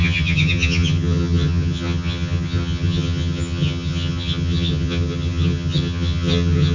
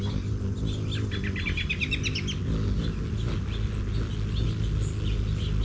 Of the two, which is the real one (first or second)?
second